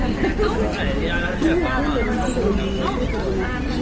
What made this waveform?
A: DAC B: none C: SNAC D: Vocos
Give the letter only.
B